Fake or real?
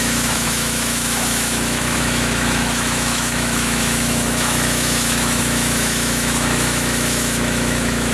fake